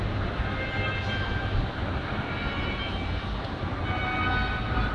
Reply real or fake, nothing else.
real